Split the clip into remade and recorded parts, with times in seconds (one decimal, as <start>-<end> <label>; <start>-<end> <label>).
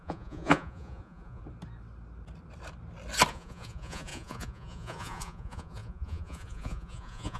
0.0-1.4 remade; 1.4-3.3 recorded; 3.3-7.4 remade